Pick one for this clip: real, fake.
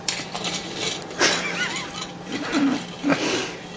real